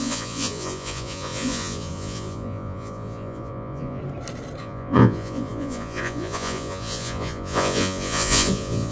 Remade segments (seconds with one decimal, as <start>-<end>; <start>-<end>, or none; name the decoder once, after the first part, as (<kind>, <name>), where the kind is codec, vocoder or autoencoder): 0.0-4.0 (vocoder, Vocos); 4.6-8.9